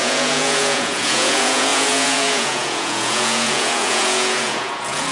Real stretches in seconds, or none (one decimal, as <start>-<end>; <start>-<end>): none

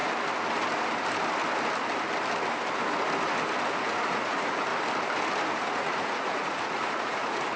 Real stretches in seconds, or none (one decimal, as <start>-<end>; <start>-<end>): 0.0-3.7; 4.7-5.5